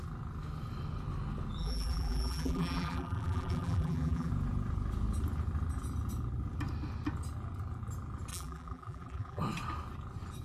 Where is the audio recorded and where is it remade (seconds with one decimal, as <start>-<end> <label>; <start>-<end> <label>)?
0.0-1.6 recorded; 1.6-4.3 remade; 4.3-8.3 recorded; 8.3-9.4 remade; 9.4-10.4 recorded